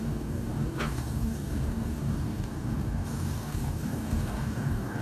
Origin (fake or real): fake